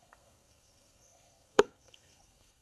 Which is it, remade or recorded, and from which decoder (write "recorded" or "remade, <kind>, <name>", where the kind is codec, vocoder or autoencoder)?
remade, codec, SNAC